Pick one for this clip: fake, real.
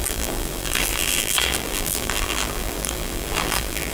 fake